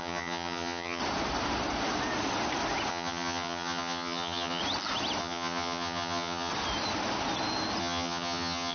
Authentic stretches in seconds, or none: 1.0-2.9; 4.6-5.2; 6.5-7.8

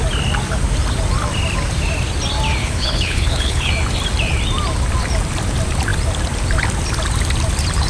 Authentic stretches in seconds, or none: 0.0-2.6; 3.7-7.9

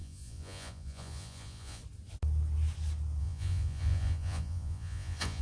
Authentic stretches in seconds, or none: 1.8-3.2

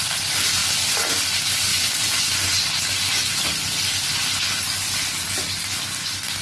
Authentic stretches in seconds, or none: 0.0-1.7; 2.6-6.4